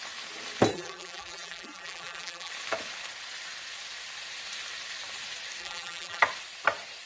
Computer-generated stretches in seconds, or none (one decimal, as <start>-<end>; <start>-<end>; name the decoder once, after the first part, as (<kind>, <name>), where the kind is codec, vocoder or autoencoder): 0.7-2.5 (vocoder, BigVGAN v2); 5.6-6.2

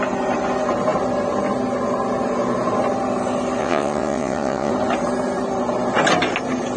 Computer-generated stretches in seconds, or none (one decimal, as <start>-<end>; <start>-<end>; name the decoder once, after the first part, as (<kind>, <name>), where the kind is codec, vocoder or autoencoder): 3.6-4.7 (vocoder, WaveNeXt)

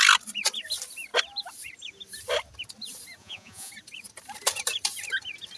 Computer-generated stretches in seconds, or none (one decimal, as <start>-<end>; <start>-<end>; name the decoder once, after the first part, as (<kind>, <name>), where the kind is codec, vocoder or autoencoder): 3.2-3.7 (vocoder, Vocos)

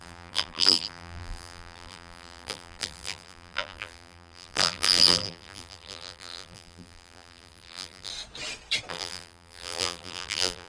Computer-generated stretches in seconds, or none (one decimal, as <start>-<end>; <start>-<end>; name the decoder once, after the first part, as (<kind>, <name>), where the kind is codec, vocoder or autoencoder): 0.0-8.1 (vocoder, BigVGAN v2); 8.9-10.7

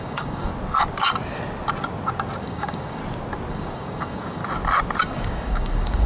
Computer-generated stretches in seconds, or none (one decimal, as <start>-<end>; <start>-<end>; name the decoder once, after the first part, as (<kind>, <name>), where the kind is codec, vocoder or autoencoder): 0.0-0.5 (codec, DAC); 2.4-3.0; 3.5-4.4; 5.0-6.1